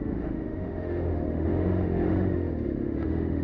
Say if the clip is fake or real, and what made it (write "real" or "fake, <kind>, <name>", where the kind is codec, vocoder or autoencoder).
fake, autoencoder, DAC-VAE